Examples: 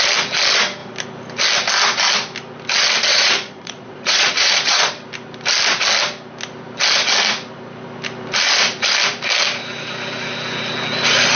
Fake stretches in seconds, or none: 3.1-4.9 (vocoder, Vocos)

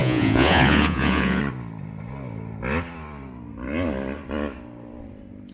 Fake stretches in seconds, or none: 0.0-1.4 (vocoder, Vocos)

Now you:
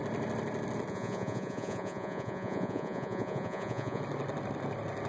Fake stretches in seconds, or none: 0.9-4.0 (vocoder, Vocos)

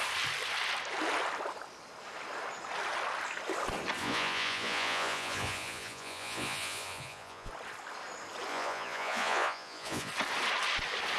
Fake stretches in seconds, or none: 4.0-7.5 (vocoder, Vocos); 8.5-10.1

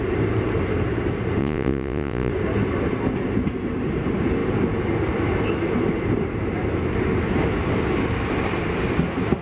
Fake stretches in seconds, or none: 1.4-2.3 (vocoder, Vocos)

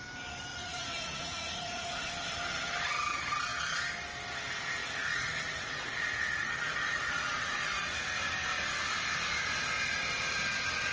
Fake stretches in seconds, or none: 0.5-2.1 (vocoder, Vocos); 4.8-8.0

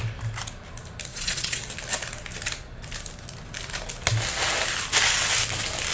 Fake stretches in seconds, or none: 1.1-1.6 (vocoder, Vocos)